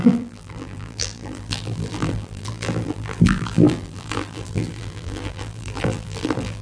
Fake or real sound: fake